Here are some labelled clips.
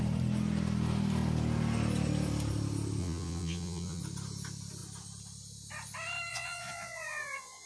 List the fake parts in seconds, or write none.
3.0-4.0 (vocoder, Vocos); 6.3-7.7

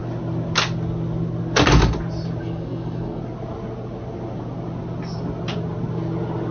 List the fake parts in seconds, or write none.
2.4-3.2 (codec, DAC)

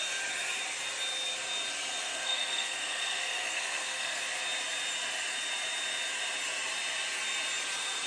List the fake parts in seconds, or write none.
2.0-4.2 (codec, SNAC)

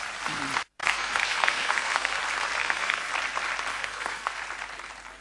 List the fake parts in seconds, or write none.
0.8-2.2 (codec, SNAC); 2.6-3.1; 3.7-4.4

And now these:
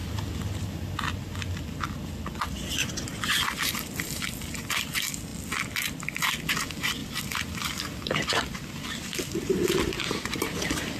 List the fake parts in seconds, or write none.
0.0-1.1 (vocoder, BigVGAN v2); 3.1-4.4; 7.0-8.3

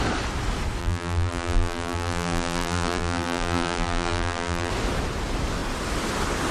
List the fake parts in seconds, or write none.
0.8-4.7 (vocoder, BigVGAN v2)